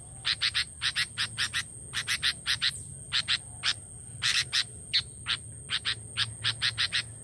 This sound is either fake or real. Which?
real